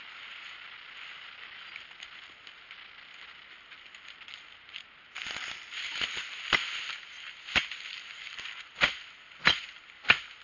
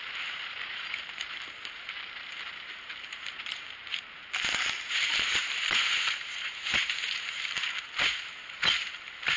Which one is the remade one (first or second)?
second